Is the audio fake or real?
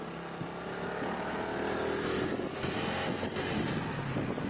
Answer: real